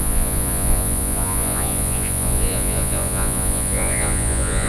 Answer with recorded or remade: remade